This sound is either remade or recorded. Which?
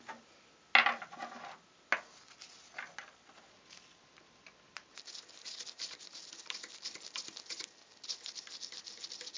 recorded